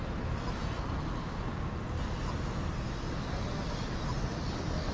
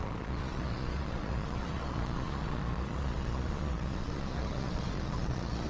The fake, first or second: second